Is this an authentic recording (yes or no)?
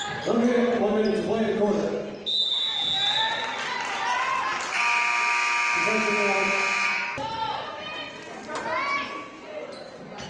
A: yes